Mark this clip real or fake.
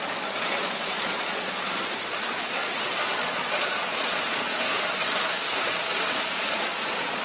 fake